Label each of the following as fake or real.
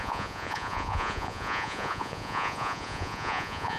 fake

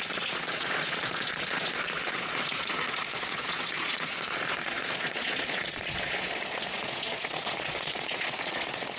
fake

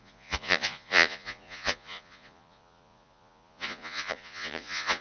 fake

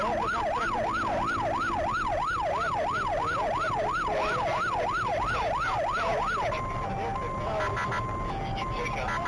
real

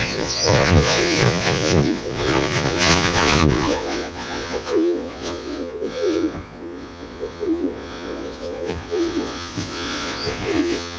fake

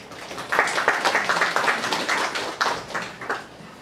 real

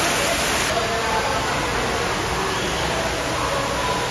real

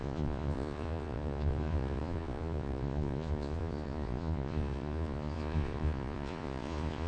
fake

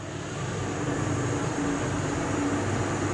real